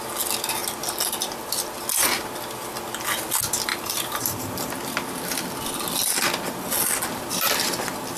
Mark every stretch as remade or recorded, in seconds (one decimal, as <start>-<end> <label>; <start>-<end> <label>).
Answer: 0.0-3.7 recorded; 3.7-4.8 remade; 4.8-8.2 recorded